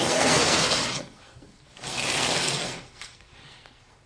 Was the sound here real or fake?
fake